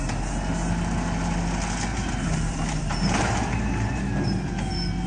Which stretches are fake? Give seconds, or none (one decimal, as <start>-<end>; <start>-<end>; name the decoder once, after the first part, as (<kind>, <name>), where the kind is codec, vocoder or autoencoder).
1.9-3.9 (vocoder, BigVGAN v2)